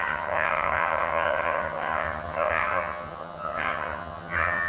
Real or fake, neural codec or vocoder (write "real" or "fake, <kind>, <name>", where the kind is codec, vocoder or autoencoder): fake, vocoder, HiFi-GAN